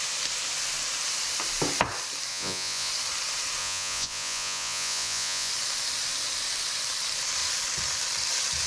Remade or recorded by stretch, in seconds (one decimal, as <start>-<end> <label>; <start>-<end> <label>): 0.0-2.3 recorded; 2.3-2.9 remade; 2.9-3.6 recorded; 3.6-5.5 remade; 5.5-8.7 recorded